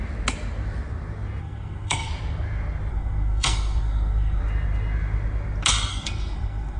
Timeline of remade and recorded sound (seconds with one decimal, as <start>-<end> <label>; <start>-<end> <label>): 0.0-1.4 recorded; 1.4-2.1 remade; 2.1-2.9 recorded; 2.9-4.4 remade; 4.4-5.9 recorded; 5.9-6.8 remade